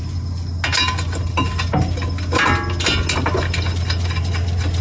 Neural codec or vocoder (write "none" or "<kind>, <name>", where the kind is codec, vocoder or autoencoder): none